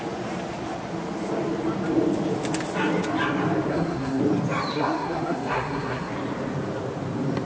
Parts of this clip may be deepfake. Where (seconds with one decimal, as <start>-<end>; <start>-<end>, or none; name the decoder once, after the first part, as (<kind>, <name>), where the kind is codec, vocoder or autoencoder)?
3.7-4.2 (codec, SNAC); 4.7-6.1